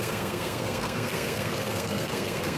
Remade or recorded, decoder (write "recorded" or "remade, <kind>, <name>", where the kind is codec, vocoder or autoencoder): remade, codec, SNAC